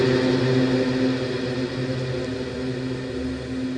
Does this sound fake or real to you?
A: real